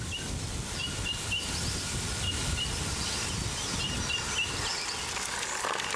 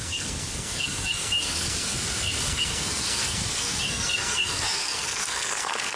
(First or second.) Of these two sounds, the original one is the first